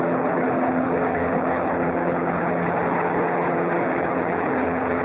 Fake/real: fake